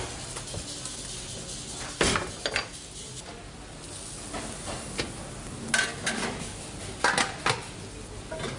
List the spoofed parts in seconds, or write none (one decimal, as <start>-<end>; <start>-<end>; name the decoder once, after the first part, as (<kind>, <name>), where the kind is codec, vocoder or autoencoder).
5.9-6.6 (codec, DAC)